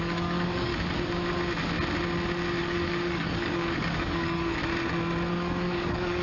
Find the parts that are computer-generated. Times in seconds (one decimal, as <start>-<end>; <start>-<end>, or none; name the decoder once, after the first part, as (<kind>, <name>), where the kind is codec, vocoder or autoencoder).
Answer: 0.0-0.7 (codec, DAC); 2.6-4.6; 5.3-6.2